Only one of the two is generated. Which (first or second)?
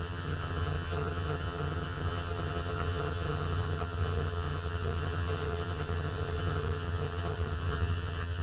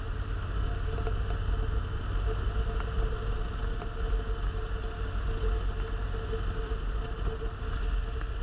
first